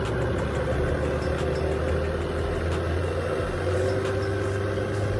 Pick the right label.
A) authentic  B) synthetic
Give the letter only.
A